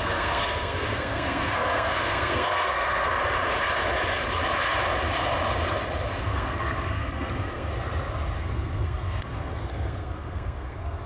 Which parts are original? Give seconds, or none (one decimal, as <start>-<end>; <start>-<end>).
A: 3.1-6.2; 7.7-8.4